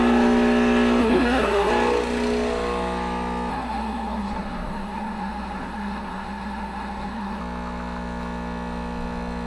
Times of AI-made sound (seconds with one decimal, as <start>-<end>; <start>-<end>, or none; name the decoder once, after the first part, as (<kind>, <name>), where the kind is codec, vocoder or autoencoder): 1.0-1.7 (codec, SNAC); 3.5-7.4